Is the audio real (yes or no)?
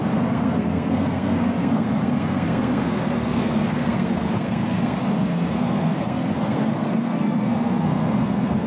no